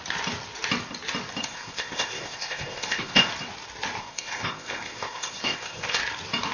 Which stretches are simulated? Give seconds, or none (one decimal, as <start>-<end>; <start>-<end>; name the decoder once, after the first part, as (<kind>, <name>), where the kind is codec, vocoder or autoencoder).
1.4-3.3 (codec, ZipCodec); 4.0-6.0